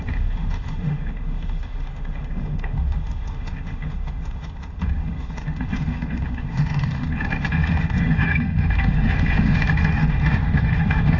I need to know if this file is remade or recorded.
remade